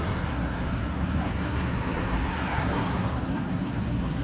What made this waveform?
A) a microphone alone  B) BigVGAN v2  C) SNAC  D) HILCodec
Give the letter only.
C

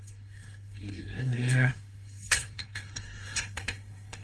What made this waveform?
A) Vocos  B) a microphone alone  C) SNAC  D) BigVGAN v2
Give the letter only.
C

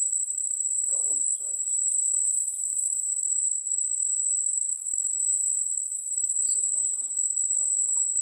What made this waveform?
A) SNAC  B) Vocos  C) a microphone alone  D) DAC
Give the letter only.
A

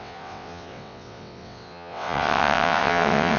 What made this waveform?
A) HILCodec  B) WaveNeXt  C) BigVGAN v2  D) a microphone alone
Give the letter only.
B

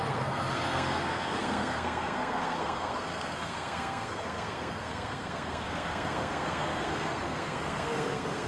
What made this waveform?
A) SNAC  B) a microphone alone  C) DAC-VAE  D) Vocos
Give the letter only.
A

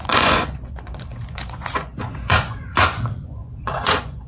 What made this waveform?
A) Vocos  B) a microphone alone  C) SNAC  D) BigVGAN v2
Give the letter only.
A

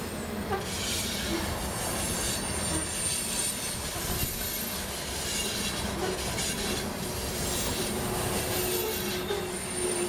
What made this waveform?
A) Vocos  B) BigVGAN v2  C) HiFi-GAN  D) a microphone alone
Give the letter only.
D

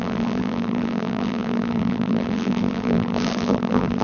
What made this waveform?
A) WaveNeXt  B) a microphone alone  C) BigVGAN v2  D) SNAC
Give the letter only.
C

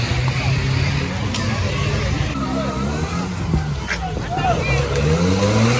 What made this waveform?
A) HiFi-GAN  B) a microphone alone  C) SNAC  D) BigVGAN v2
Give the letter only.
B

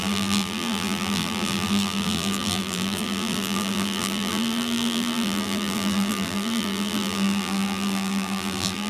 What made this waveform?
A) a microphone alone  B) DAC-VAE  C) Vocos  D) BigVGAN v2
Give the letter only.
D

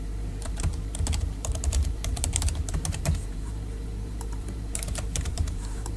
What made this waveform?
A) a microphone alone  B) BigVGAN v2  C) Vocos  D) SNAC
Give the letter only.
B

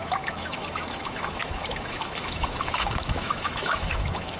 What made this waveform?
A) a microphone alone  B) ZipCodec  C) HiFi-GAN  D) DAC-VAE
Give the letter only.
D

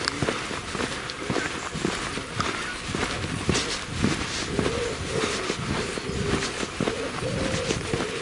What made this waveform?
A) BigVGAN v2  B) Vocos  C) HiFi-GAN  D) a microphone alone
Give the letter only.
D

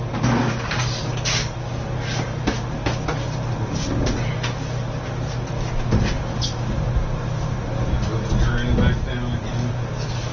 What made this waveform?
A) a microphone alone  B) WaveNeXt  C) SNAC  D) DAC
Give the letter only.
A